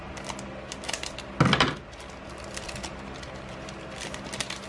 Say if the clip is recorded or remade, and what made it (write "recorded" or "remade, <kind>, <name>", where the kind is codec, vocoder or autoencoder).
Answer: recorded